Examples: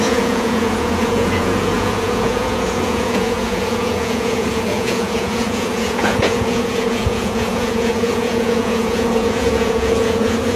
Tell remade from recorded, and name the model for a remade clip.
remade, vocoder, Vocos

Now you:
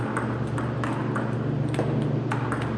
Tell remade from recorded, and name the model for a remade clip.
recorded